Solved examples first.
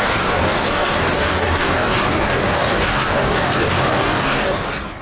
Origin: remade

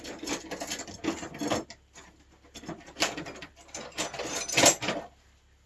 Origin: recorded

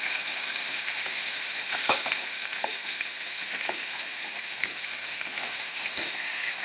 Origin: remade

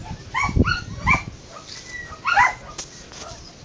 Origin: recorded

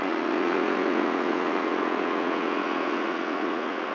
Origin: remade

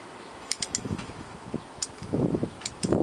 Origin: remade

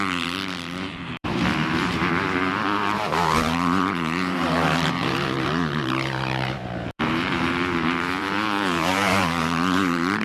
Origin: remade